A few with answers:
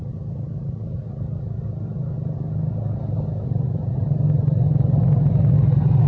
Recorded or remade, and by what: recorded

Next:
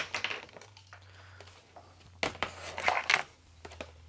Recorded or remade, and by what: recorded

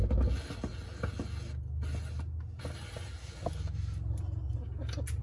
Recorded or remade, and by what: recorded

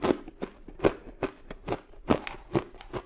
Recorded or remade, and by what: recorded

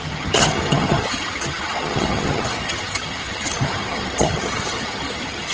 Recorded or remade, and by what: remade, vocoder, HiFi-GAN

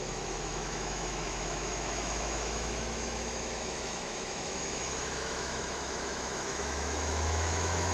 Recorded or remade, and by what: remade, autoencoder, DAC-VAE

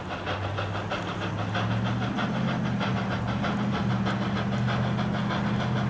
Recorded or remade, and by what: recorded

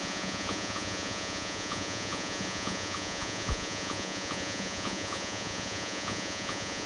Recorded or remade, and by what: remade, vocoder, Vocos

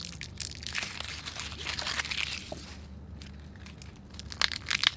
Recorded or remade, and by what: recorded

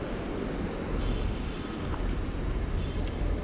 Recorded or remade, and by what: recorded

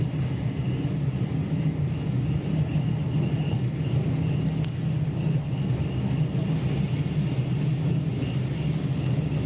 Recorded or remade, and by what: recorded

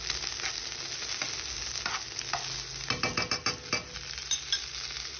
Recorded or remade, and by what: recorded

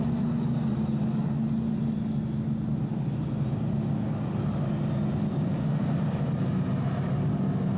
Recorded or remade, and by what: recorded